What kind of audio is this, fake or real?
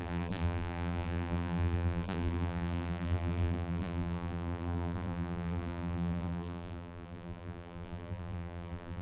fake